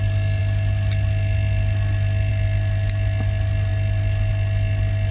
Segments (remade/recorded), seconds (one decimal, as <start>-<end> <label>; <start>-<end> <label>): 0.0-5.1 recorded